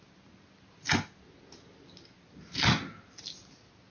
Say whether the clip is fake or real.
real